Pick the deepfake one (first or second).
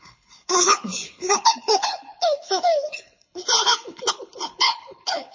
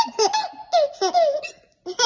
first